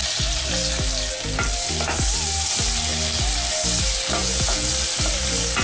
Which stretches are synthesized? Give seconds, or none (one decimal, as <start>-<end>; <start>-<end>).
4.2-4.7